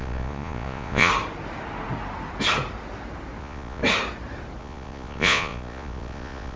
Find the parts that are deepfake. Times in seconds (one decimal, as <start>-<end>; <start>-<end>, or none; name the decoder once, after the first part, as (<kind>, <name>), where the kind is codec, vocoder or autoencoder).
0.0-1.1 (vocoder, Vocos); 3.4-3.8; 4.6-6.6